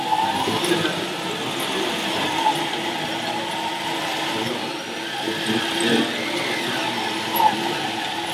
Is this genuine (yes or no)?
yes